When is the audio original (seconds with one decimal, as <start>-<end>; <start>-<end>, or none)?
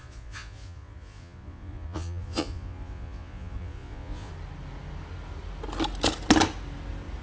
4.3-7.2